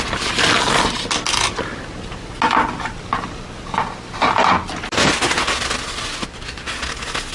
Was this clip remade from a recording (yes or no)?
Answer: no